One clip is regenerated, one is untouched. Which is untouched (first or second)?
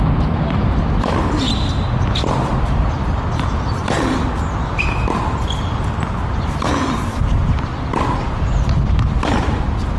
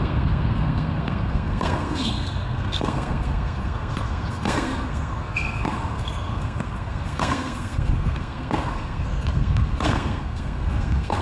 first